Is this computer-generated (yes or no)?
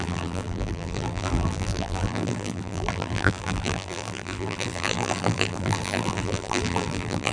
yes